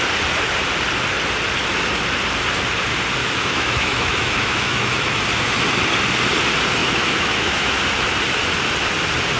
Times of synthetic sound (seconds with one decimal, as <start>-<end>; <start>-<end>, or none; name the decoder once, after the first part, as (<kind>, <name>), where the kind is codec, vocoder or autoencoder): 3.2-5.2 (autoencoder, DAC-VAE); 6.8-7.8